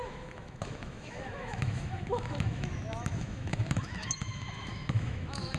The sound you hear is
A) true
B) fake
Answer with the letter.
B